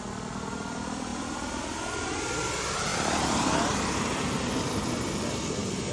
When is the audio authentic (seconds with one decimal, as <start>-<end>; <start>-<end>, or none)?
0.0-5.9